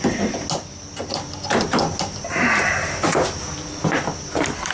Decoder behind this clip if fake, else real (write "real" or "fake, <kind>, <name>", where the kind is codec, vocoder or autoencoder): real